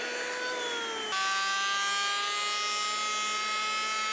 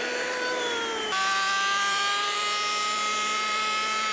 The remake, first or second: second